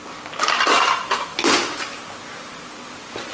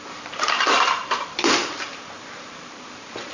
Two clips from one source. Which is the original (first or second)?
first